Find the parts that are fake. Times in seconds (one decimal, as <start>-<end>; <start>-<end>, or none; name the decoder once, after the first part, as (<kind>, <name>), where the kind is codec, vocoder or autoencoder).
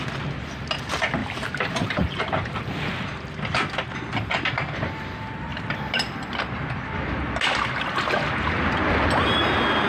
1.2-3.0 (vocoder, BigVGAN v2)